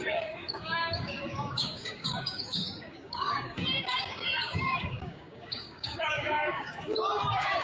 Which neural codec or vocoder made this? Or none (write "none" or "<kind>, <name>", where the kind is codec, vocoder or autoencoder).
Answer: codec, DAC